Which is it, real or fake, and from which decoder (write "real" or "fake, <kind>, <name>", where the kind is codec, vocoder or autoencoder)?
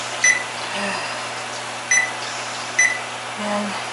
real